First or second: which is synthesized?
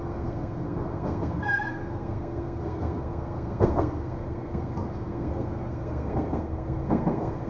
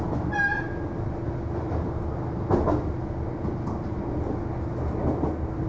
first